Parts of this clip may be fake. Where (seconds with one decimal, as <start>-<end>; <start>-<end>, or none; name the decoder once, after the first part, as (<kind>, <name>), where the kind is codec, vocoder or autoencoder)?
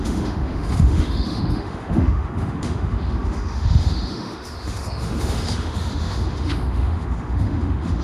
0.0-8.0 (autoencoder, DAC-VAE)